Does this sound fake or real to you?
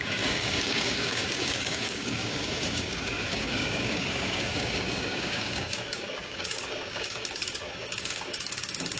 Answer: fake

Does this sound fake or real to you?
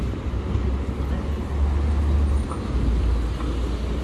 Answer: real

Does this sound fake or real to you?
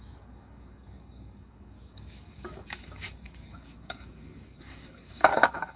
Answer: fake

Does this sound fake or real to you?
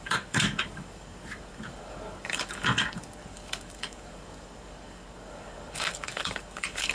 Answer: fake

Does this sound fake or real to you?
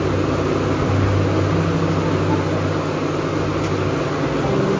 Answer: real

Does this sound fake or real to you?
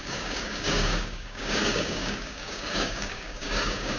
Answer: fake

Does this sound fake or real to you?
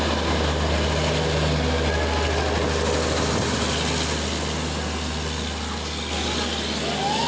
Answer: real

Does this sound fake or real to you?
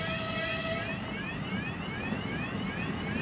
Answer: real